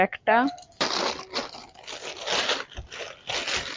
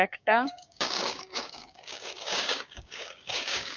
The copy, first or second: second